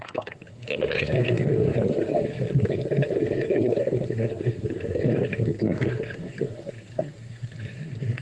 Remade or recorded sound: remade